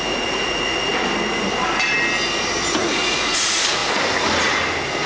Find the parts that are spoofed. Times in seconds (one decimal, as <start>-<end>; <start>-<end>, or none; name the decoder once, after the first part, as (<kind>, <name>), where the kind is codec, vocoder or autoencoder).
0.0-0.9 (vocoder, Vocos); 2.8-3.8